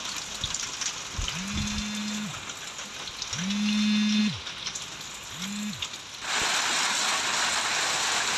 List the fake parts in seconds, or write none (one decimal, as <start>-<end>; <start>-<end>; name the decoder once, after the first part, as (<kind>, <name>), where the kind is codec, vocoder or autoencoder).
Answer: none

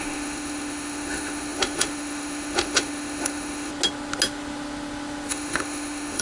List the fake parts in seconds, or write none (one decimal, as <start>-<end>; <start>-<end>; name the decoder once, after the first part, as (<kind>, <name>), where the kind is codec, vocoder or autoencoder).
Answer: 0.0-3.7 (autoencoder, DAC-VAE); 5.3-6.2

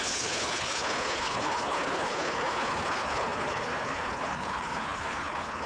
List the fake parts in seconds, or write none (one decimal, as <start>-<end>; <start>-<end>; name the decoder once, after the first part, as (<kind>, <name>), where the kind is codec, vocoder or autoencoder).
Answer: 0.0-5.7 (codec, HILCodec)